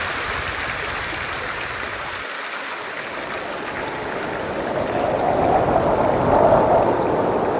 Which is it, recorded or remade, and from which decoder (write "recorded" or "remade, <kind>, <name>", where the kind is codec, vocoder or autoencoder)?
recorded